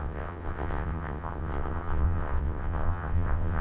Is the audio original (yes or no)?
no